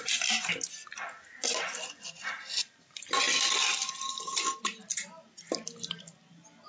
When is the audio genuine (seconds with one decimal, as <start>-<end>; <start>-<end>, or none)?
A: 0.0-6.7